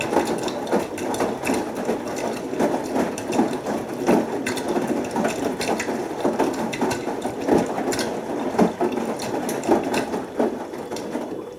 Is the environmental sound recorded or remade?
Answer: recorded